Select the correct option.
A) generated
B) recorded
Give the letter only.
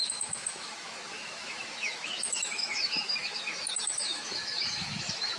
A